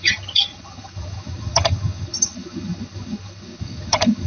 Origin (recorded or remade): remade